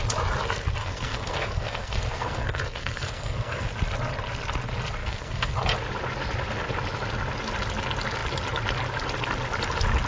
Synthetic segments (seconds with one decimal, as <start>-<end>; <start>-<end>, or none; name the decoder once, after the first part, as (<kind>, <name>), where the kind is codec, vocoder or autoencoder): 0.8-3.7 (codec, SNAC); 5.0-5.5